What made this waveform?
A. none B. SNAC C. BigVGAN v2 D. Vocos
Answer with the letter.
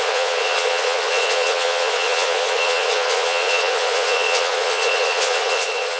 D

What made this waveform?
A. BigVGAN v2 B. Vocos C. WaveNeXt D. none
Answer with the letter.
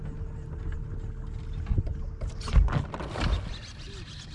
D